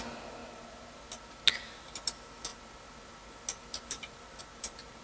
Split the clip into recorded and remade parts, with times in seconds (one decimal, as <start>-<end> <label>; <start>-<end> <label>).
0.0-5.0 recorded